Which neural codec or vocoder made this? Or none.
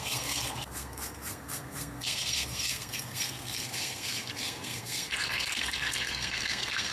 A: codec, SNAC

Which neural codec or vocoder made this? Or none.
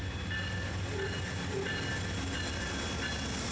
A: none